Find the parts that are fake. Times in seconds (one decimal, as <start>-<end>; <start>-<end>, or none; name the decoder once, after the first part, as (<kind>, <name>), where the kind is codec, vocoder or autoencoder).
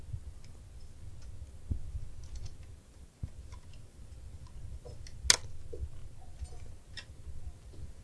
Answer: none